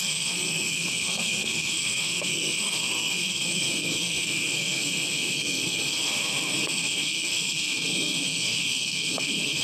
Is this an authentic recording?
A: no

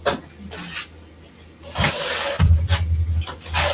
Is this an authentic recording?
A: yes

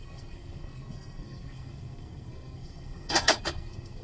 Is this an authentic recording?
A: no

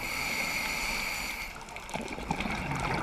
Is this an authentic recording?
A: yes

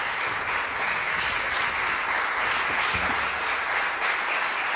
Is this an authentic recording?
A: yes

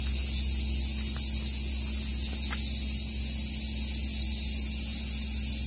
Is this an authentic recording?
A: yes